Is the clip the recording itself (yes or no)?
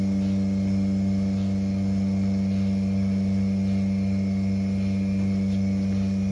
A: yes